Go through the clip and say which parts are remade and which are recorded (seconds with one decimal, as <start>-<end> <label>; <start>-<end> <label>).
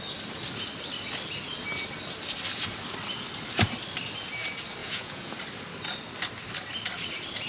0.0-4.8 recorded; 4.8-5.4 remade; 5.4-7.5 recorded